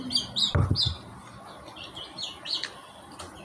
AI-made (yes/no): no